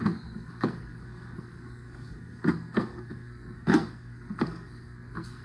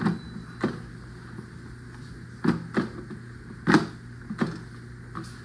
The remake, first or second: first